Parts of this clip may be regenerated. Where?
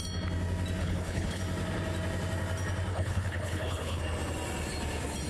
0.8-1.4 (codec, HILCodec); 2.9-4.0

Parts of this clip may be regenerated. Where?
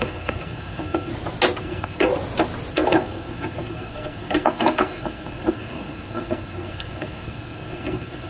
0.0-1.1 (codec, SNAC); 1.6-2.1; 2.7-8.3